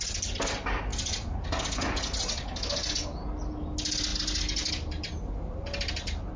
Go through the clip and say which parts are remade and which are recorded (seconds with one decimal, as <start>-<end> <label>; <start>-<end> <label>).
0.0-6.4 recorded

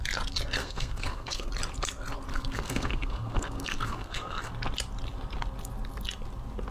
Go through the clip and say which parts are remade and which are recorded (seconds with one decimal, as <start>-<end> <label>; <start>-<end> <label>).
0.0-0.6 recorded; 0.6-1.5 remade; 1.5-2.3 recorded; 2.3-4.5 remade; 4.5-6.7 recorded

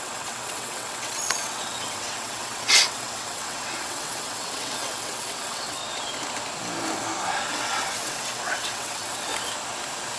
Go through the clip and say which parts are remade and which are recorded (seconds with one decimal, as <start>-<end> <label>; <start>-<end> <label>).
0.0-5.8 remade; 5.8-7.5 recorded; 7.5-9.3 remade; 9.3-10.2 recorded

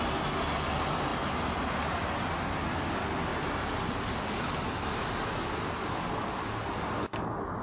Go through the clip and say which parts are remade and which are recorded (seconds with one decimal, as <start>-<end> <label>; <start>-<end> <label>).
0.0-7.6 recorded

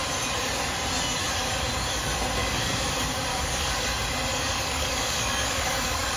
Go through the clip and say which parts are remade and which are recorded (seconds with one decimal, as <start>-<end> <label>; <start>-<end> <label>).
0.0-2.4 recorded; 2.4-2.9 remade; 2.9-3.3 recorded; 3.3-3.9 remade; 3.9-4.3 recorded; 4.3-6.2 remade